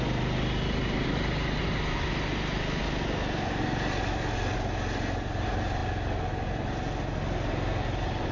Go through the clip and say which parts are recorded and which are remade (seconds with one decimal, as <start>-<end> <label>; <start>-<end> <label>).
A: 0.0-8.3 recorded